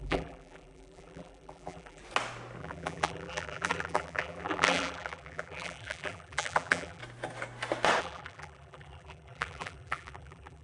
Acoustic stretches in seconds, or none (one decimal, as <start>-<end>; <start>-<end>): 2.0-2.6; 7.0-8.0